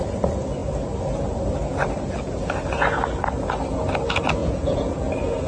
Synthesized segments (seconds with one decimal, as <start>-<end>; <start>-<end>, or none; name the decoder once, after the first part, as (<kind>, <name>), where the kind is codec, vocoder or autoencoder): 4.4-5.1 (vocoder, Vocos)